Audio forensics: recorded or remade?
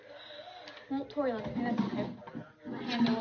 recorded